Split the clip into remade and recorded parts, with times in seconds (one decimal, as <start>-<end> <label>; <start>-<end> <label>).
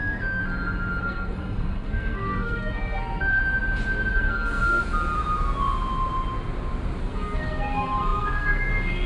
0.0-0.4 remade; 0.4-1.0 recorded; 1.0-3.4 remade; 3.4-4.1 recorded; 4.1-4.8 remade; 4.8-7.0 recorded; 7.0-9.1 remade